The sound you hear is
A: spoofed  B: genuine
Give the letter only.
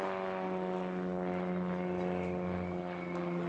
B